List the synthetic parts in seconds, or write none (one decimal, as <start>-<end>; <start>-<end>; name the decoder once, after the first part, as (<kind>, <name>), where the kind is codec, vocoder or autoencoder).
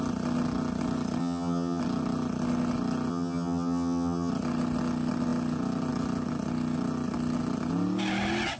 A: 1.2-1.8 (vocoder, HiFi-GAN); 3.1-4.3